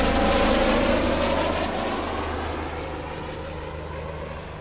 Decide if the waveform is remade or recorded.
recorded